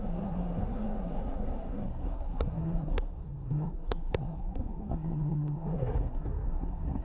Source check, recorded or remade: remade